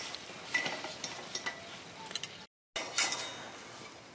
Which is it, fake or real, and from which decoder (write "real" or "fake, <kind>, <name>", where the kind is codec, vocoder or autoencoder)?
real